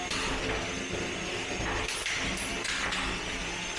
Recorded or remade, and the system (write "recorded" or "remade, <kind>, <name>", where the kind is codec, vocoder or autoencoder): recorded